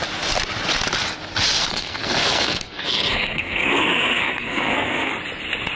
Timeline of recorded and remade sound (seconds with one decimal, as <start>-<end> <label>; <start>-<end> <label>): 0.0-1.6 recorded; 1.6-5.1 remade; 5.1-5.8 recorded